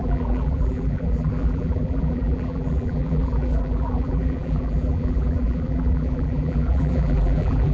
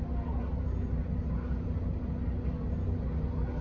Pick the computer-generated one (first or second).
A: first